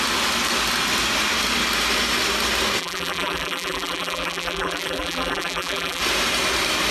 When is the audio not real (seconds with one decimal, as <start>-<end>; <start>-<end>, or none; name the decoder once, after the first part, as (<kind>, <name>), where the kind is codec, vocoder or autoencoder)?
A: 2.8-6.0 (vocoder, BigVGAN v2)